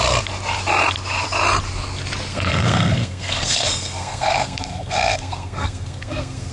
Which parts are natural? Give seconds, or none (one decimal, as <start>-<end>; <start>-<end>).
0.0-2.3